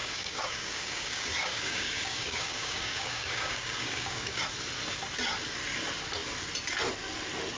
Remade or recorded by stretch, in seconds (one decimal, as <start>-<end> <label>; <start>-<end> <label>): 0.0-4.4 remade; 4.4-7.6 recorded